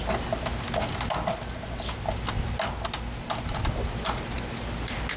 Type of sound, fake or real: real